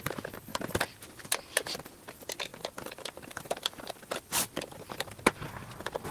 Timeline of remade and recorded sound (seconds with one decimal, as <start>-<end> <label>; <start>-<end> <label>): 0.0-2.5 recorded; 2.5-5.5 remade; 5.5-6.1 recorded